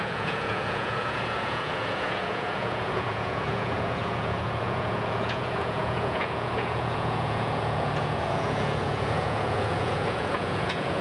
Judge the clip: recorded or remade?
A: remade